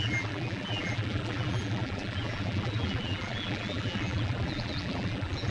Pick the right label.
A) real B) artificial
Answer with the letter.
B